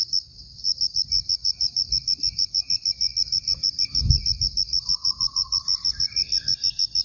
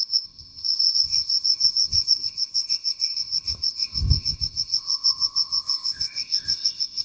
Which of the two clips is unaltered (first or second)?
first